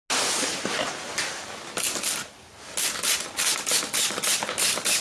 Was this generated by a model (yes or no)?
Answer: no